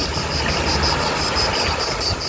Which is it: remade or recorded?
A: recorded